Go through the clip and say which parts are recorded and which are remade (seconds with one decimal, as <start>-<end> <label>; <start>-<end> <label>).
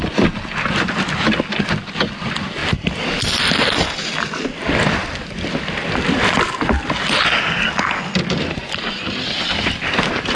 0.0-10.4 recorded